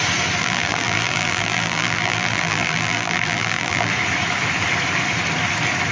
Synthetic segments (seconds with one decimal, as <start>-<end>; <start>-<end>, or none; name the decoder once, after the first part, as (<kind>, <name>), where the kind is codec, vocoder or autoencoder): 0.4-3.9 (vocoder, BigVGAN v2)